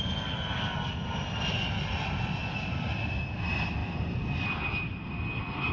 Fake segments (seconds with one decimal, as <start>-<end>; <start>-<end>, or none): 3.8-5.7

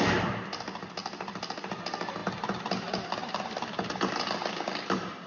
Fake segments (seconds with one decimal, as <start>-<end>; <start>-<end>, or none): none

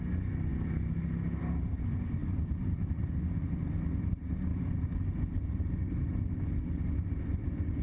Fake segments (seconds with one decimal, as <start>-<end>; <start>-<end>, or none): none

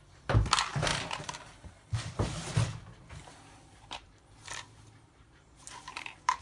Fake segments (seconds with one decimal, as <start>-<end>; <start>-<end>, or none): 0.0-0.9; 2.0-6.4

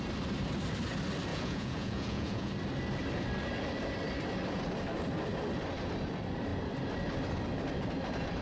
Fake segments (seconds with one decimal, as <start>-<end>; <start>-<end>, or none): 1.3-2.5

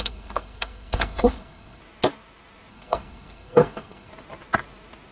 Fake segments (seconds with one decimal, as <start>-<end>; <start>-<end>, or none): 0.0-1.8; 2.7-4.1

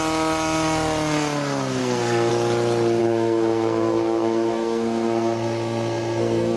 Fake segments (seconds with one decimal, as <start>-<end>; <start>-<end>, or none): 1.8-2.3; 3.0-6.6

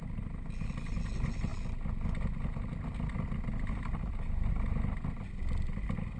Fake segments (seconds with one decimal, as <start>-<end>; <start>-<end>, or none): none